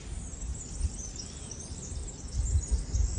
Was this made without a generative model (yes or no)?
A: yes